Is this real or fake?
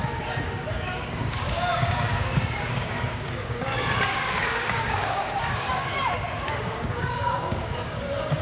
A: fake